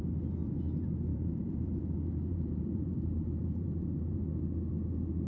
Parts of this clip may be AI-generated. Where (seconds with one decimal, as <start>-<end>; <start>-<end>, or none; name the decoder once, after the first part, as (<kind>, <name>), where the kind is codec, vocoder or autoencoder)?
1.1-1.8 (vocoder, BigVGAN v2); 2.3-4.2